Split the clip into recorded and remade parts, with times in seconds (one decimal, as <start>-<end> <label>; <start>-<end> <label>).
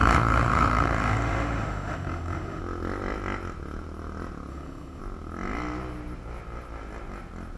0.0-2.6 remade; 2.6-4.5 recorded; 4.5-5.0 remade; 5.0-7.6 recorded